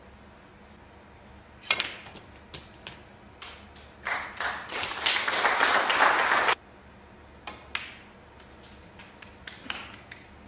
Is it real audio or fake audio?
real